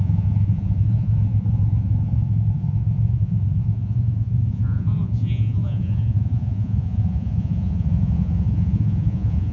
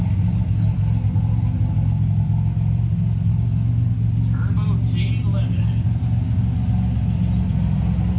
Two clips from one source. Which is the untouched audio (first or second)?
second